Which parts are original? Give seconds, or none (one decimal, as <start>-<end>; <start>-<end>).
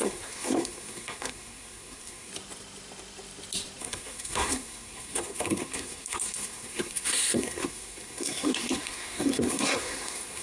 2.3-3.8